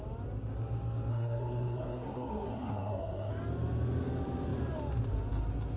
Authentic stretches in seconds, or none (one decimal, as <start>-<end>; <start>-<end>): 0.0-1.1; 3.3-5.8